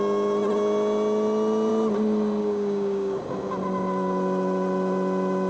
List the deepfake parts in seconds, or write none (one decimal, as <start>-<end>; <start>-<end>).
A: 2.4-3.2